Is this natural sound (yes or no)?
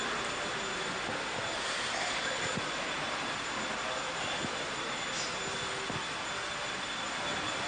yes